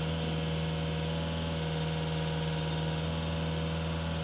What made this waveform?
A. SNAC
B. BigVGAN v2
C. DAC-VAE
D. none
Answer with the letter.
D